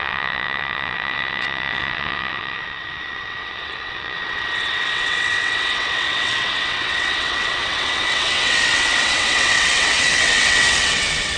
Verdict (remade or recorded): remade